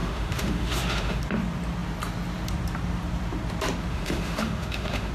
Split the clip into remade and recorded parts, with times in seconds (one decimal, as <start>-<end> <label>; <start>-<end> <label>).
0.0-1.2 remade; 1.2-3.9 recorded; 3.9-5.1 remade